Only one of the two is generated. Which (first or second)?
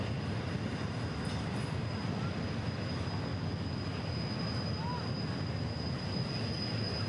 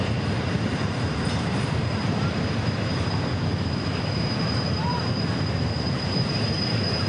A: second